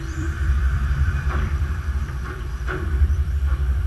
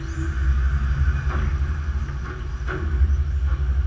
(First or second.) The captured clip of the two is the second